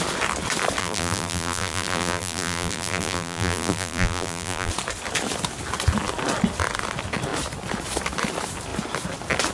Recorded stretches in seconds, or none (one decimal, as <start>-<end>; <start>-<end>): 0.0-0.8; 4.7-9.5